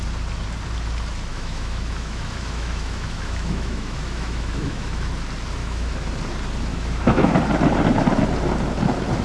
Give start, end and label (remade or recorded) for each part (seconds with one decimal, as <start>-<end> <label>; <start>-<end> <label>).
0.0-1.3 recorded; 1.3-5.1 remade; 5.1-5.6 recorded; 5.6-6.1 remade; 6.1-6.7 recorded; 6.7-7.3 remade; 7.3-9.2 recorded